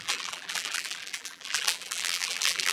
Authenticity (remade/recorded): remade